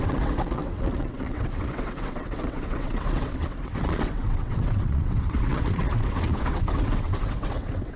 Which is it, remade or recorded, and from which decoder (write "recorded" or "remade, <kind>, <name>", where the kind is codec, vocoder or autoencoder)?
remade, vocoder, WaveNeXt